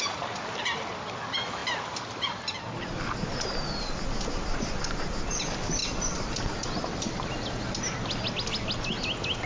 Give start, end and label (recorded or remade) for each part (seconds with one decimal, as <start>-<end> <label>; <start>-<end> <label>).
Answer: 0.0-9.5 recorded